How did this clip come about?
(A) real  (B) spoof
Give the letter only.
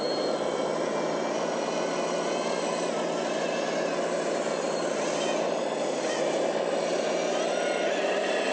A